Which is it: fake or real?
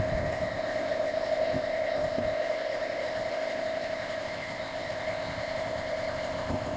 fake